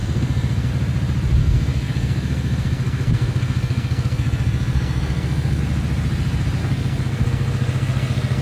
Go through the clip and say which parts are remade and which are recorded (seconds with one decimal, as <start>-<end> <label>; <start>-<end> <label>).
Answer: 0.0-0.7 remade; 0.7-1.4 recorded; 1.4-5.6 remade; 5.6-6.6 recorded; 6.6-8.4 remade